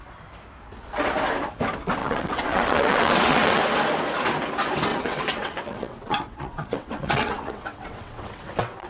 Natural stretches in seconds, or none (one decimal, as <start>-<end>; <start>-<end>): 0.0-2.0; 3.6-4.9